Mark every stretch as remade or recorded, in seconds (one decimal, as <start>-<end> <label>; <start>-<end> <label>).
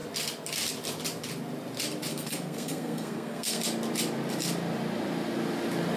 0.0-2.1 recorded; 2.1-3.6 remade; 3.6-6.0 recorded